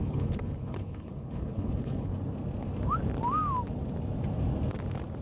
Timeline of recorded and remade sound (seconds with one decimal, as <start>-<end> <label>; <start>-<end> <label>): 0.0-2.1 remade; 2.1-5.2 recorded